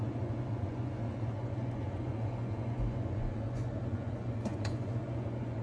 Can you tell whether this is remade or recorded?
remade